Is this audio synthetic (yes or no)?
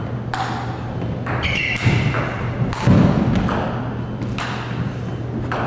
no